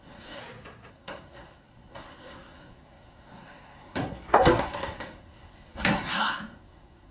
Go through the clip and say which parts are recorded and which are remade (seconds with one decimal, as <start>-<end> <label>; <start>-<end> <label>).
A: 0.0-0.4 remade; 0.4-0.9 recorded; 0.9-7.1 remade